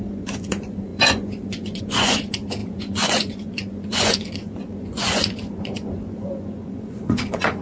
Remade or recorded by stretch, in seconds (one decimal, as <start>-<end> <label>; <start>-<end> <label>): 0.0-7.6 remade